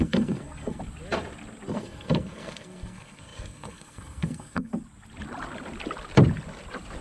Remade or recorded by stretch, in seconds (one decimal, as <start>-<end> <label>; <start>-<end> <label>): 0.0-0.8 remade; 0.8-1.7 recorded; 1.7-4.7 remade; 4.7-7.0 recorded